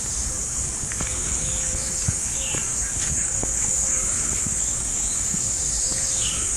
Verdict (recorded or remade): remade